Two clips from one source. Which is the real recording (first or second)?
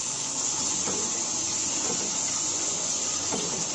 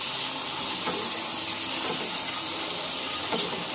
second